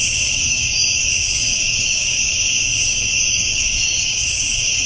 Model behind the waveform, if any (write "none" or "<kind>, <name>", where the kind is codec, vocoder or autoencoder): codec, DAC